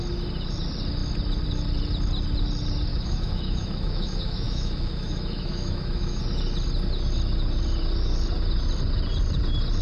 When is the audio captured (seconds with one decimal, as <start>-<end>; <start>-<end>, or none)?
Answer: 0.0-2.9; 6.2-9.8